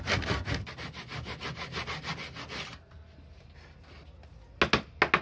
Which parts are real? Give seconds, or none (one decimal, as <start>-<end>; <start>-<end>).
0.0-5.2